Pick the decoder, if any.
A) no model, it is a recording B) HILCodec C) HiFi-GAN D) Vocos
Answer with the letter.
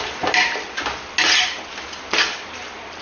A